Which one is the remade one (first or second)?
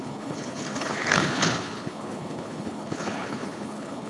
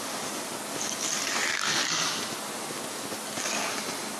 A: first